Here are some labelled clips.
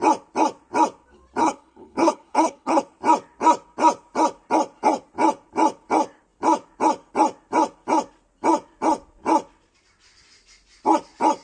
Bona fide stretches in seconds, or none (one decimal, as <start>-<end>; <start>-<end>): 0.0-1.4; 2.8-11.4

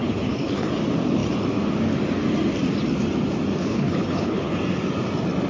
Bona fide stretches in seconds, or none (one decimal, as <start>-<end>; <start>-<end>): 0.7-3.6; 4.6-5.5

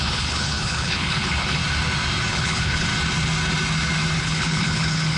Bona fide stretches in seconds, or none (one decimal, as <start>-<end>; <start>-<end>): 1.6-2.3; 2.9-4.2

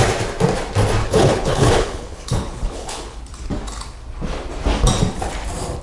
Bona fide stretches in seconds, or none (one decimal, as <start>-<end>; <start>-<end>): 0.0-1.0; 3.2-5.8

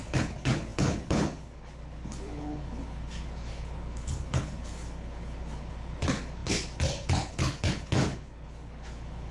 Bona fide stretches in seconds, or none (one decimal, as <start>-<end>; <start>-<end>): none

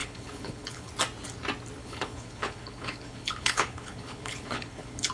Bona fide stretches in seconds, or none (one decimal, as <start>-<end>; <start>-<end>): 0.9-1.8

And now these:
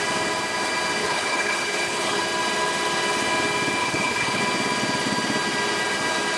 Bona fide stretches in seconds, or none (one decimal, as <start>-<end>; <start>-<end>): 0.0-1.0; 2.2-3.8; 4.4-6.4

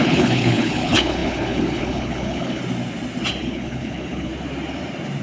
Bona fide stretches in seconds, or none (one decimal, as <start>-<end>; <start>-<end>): 2.6-3.4; 4.3-5.2